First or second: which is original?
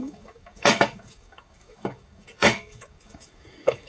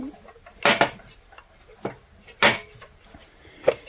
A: second